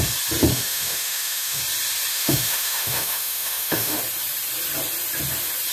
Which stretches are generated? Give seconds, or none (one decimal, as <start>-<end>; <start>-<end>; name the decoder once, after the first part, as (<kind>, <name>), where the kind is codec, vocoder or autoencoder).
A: 0.5-1.6 (autoencoder, DAC-VAE); 2.1-4.0